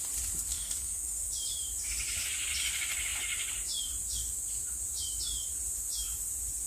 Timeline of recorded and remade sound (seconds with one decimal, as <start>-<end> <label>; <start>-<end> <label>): 0.0-0.4 recorded; 0.4-1.3 remade; 1.3-6.7 recorded